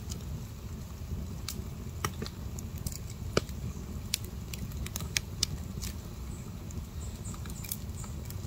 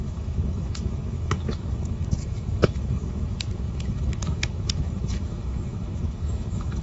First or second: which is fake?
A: second